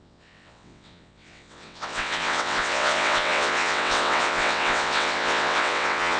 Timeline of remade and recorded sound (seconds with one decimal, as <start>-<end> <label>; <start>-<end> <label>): 0.0-6.2 remade